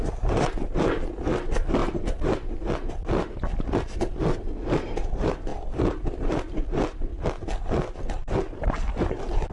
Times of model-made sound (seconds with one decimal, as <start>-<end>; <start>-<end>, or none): 0.0-1.8; 2.9-7.1; 8.9-9.5